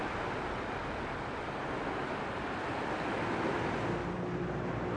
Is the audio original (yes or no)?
yes